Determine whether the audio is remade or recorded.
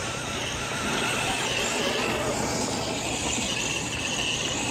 recorded